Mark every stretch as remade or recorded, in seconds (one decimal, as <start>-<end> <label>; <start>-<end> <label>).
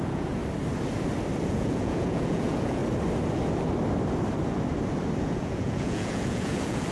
0.0-0.4 remade; 0.4-1.5 recorded; 1.5-2.8 remade; 2.8-5.2 recorded; 5.2-6.9 remade